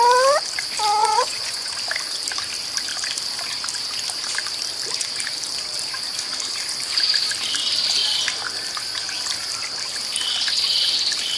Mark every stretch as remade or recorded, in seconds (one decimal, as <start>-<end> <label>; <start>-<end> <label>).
0.0-1.0 recorded; 1.0-1.7 remade; 1.7-11.4 recorded